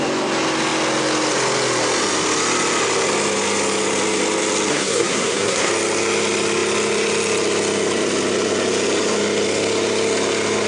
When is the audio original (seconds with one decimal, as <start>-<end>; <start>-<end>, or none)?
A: 0.0-4.7; 5.7-10.7